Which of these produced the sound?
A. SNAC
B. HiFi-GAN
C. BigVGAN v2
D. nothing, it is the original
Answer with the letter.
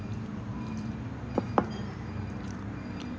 C